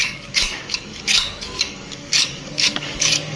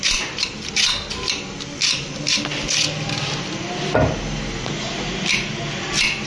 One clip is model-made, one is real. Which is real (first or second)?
second